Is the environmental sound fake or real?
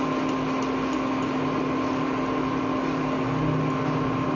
real